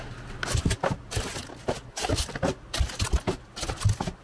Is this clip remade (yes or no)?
no